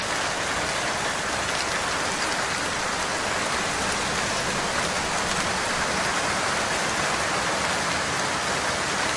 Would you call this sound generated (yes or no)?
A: no